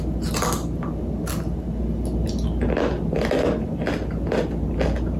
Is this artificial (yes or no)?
no